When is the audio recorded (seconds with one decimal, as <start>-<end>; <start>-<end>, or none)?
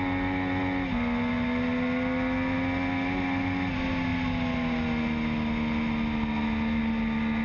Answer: 0.0-7.4